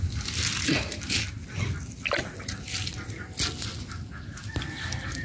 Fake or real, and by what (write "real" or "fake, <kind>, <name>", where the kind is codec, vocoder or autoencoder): real